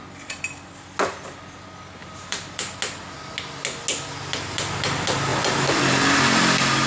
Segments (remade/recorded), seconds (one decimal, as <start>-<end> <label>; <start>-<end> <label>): 0.0-2.0 recorded; 2.0-2.6 remade; 2.6-5.3 recorded; 5.3-6.4 remade; 6.4-6.9 recorded